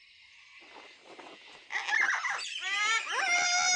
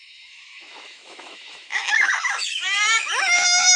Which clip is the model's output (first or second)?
second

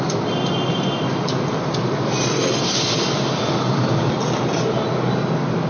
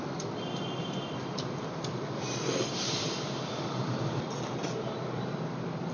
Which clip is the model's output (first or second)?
second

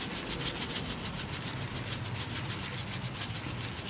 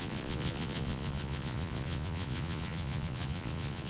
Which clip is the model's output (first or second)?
second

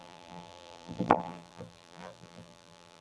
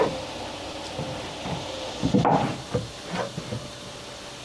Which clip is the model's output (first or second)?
first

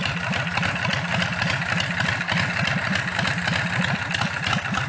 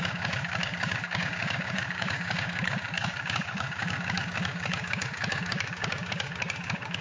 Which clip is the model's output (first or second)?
second